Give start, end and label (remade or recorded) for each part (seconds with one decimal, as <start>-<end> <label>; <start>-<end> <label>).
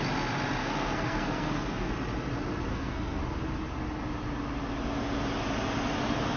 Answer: 0.0-0.6 recorded; 0.6-1.9 remade; 1.9-2.7 recorded; 2.7-3.2 remade; 3.2-6.4 recorded